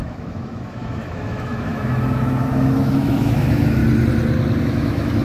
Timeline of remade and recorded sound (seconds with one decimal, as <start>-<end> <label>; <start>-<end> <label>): 0.0-3.8 remade; 3.8-4.6 recorded; 4.6-5.2 remade